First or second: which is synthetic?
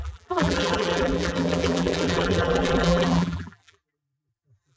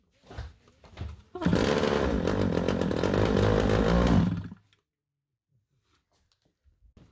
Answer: first